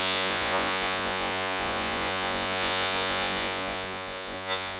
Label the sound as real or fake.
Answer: fake